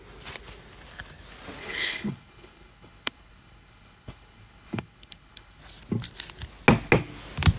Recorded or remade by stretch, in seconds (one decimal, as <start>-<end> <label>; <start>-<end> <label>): 0.0-1.6 recorded; 1.6-5.6 remade; 5.6-7.6 recorded